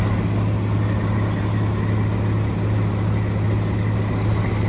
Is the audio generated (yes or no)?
no